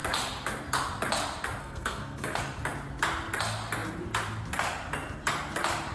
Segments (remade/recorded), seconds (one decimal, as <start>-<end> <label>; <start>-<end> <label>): 0.0-1.6 recorded; 1.6-2.4 remade; 2.4-5.9 recorded